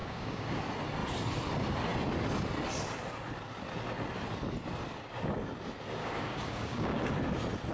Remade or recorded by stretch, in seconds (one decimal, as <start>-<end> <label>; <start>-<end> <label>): 0.0-0.6 remade; 0.6-6.0 recorded; 6.0-7.1 remade; 7.1-7.7 recorded